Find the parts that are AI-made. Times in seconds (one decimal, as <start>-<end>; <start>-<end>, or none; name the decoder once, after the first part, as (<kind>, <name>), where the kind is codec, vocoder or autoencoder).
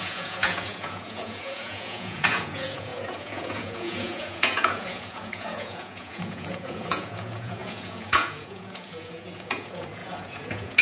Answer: 0.0-10.8 (vocoder, Vocos)